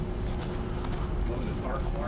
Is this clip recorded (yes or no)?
yes